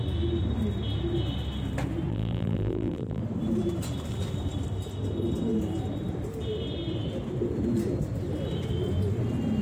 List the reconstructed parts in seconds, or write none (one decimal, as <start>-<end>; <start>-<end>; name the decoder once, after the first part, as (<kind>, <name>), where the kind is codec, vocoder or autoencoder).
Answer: 2.1-3.2 (vocoder, BigVGAN v2)